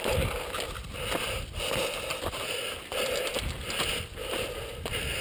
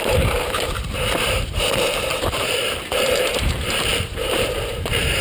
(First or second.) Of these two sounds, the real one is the first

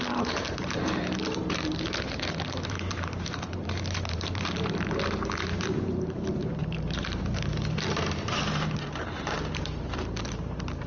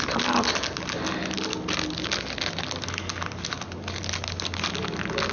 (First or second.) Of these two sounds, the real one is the second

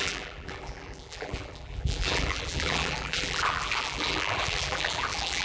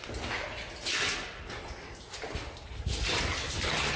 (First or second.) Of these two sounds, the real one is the second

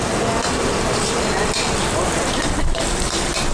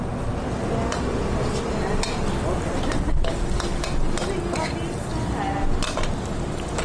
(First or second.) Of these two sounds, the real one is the second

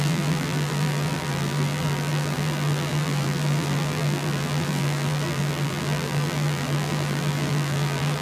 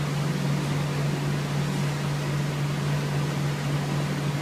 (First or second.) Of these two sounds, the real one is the second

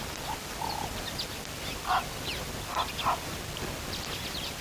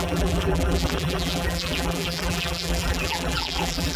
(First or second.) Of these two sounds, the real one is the first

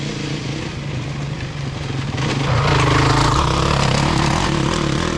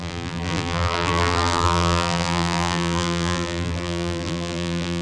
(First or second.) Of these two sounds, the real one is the first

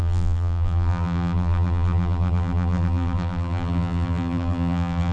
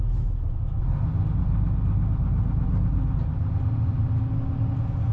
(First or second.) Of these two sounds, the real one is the second